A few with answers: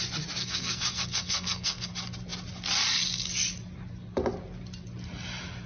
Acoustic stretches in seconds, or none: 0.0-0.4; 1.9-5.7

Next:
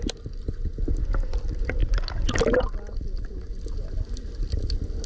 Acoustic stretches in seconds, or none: 0.0-5.1

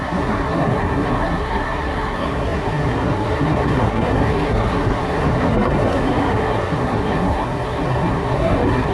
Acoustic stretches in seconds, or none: none

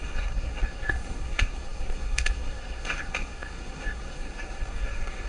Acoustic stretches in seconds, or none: none

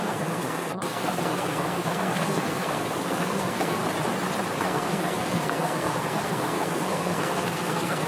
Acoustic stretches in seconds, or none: 3.8-4.6